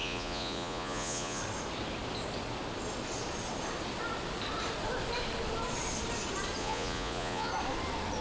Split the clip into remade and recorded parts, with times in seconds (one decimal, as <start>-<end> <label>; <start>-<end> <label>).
0.0-1.4 remade; 1.4-6.6 recorded; 6.6-7.5 remade; 7.5-8.2 recorded